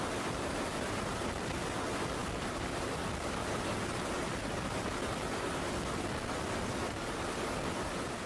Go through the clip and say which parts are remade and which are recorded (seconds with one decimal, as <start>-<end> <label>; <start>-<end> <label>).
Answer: 0.0-8.3 recorded